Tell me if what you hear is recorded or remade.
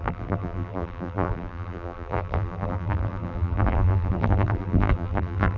remade